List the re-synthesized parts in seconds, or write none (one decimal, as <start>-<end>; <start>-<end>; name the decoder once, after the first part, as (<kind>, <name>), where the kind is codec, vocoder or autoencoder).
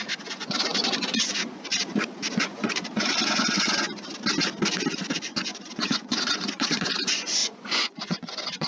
0.0-1.7 (vocoder, Vocos); 2.4-4.1; 5.2-8.7